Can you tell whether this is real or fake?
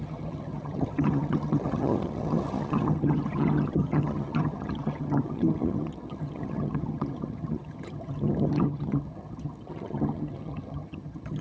fake